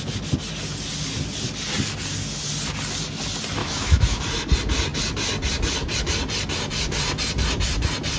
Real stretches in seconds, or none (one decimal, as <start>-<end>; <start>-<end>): 0.0-3.6; 4.2-8.2